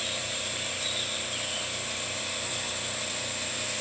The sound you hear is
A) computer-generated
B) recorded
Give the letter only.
B